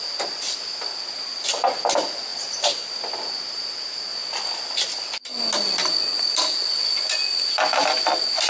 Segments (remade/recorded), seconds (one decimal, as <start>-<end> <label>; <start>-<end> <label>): 0.0-8.5 recorded